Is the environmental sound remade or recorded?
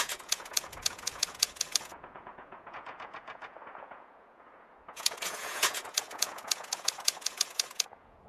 remade